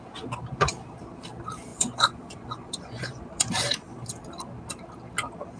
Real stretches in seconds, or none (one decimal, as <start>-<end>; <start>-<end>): 0.0-1.7; 3.5-5.6

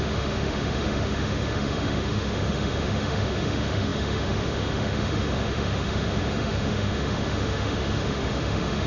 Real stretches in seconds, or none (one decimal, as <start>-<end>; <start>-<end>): none